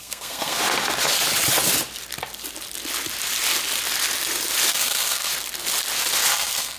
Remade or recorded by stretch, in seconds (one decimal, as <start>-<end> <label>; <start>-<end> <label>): 0.0-0.6 remade; 0.6-4.7 recorded; 4.7-5.3 remade; 5.3-6.3 recorded; 6.3-6.8 remade